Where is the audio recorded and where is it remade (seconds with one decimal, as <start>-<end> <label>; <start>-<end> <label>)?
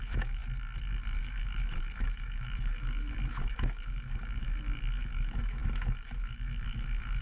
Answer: 0.0-0.4 remade; 0.4-1.2 recorded; 1.2-7.2 remade